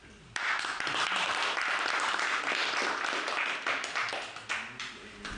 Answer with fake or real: real